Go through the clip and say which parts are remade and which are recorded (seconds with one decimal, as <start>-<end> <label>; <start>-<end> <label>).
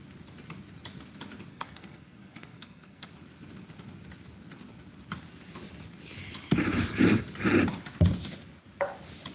0.0-1.5 recorded; 1.5-3.1 remade; 3.1-9.3 recorded